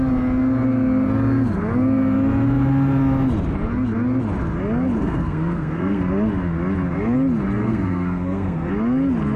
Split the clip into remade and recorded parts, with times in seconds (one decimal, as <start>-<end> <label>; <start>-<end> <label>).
0.0-5.0 recorded; 5.0-6.0 remade; 6.0-7.6 recorded; 7.6-8.7 remade; 8.7-9.4 recorded